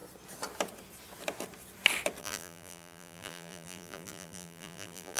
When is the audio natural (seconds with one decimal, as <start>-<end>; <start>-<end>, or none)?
0.0-2.2